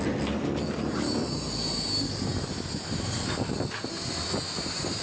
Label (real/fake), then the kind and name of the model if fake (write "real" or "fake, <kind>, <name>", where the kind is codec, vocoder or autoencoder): real